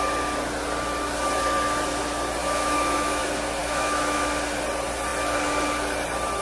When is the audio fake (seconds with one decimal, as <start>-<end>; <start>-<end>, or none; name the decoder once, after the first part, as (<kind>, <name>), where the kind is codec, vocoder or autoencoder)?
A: 2.4-3.2 (autoencoder, DAC-VAE); 3.6-4.2